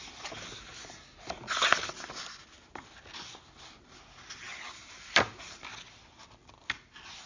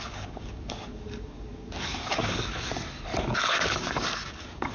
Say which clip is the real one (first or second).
first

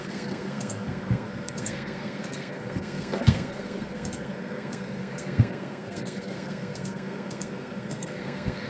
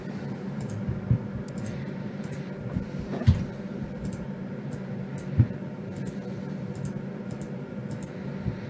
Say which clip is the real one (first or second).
second